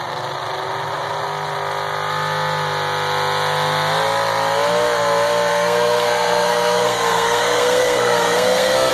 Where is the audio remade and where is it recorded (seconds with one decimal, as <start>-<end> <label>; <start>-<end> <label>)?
0.0-5.5 recorded; 5.5-8.9 remade